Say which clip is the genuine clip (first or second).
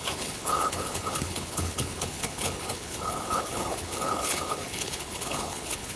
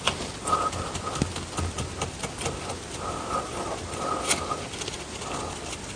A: second